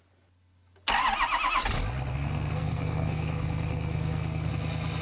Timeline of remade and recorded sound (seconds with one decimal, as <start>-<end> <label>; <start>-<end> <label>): 0.0-2.1 recorded; 2.1-4.5 remade; 4.5-5.0 recorded